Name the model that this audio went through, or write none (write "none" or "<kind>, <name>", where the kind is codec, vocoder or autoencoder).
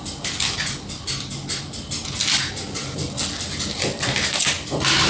none